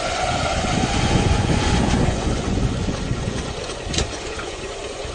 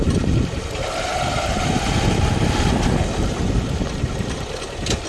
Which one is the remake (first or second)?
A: first